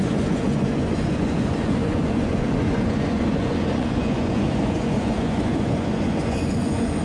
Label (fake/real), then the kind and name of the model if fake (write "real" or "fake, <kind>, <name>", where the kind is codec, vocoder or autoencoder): fake, vocoder, Vocos